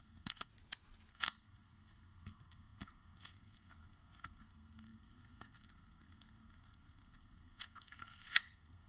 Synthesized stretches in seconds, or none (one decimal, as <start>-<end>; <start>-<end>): 0.0-0.5; 1.1-8.9

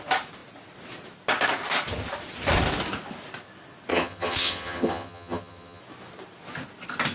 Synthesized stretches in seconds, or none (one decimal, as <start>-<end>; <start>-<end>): 3.9-5.8

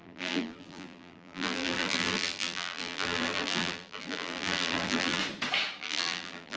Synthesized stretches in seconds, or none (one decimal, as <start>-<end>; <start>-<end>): 0.0-5.2; 5.8-6.6

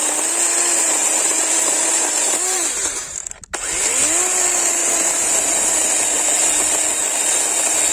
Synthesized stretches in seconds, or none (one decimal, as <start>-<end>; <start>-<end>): 1.0-3.4; 4.8-5.6

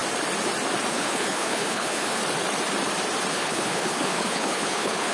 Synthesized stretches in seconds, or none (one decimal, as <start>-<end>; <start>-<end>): 0.9-2.2; 3.3-5.1

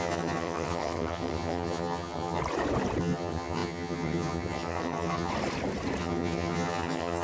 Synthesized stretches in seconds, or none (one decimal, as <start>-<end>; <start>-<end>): 0.0-2.4; 3.0-5.3; 6.0-7.2